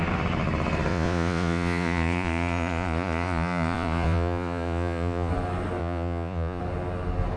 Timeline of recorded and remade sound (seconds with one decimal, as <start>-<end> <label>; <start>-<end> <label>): 0.0-0.9 recorded; 0.9-5.3 remade; 5.3-5.8 recorded; 5.8-6.6 remade; 6.6-7.4 recorded